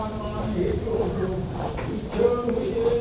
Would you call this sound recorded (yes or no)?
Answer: no